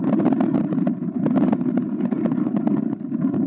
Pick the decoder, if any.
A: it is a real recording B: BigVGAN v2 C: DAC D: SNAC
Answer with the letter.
B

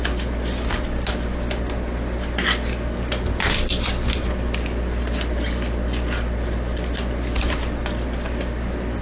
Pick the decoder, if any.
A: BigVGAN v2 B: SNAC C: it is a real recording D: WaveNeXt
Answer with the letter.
C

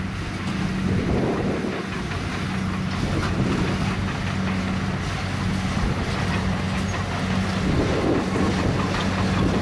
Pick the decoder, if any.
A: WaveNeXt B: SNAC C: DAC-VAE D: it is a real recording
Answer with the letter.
D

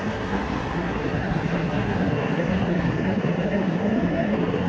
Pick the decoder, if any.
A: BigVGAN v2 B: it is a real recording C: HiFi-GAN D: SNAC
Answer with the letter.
D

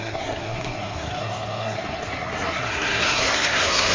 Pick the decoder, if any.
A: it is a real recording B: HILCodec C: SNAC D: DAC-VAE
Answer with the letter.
C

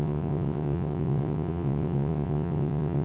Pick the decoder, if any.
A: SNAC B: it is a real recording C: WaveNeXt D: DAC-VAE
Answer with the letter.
C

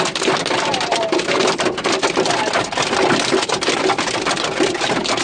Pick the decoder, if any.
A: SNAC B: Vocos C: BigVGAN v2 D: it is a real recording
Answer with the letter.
D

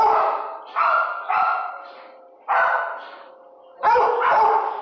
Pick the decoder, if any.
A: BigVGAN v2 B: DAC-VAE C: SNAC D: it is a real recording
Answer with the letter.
D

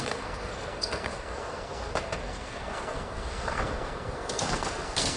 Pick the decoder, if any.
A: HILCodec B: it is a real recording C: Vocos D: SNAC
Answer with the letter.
D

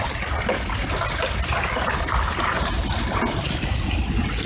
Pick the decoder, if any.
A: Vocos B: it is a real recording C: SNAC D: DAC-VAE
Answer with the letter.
B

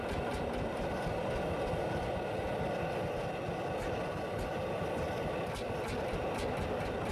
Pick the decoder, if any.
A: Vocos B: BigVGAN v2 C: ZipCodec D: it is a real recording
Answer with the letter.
D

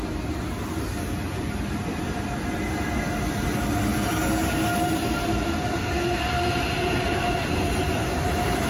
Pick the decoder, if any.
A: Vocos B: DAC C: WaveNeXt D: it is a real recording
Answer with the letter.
D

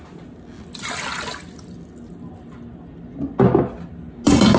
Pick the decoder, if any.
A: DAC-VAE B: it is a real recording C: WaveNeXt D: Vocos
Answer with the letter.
B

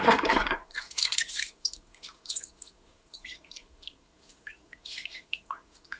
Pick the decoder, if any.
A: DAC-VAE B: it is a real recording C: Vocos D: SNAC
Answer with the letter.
D